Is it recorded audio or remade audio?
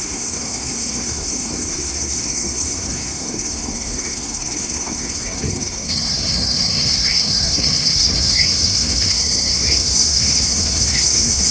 remade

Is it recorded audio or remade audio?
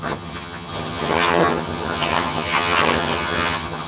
remade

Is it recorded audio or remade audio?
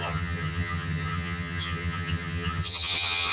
remade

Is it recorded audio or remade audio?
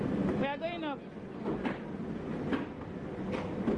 recorded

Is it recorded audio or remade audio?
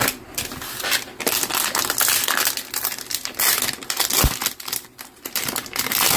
recorded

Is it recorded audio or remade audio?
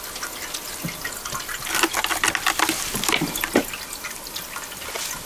recorded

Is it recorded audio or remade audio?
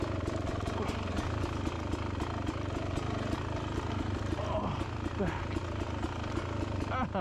recorded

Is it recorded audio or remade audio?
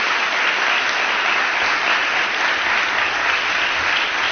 recorded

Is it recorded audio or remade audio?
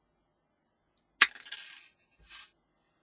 recorded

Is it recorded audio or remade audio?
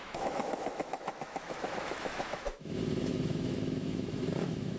remade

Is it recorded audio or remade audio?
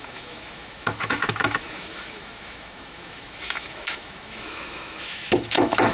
remade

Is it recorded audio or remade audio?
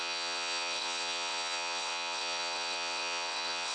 remade